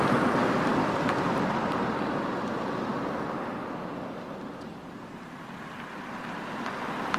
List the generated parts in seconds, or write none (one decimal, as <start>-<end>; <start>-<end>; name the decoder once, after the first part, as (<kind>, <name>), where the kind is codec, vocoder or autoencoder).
none